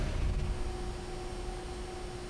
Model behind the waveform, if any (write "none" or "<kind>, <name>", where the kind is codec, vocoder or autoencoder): none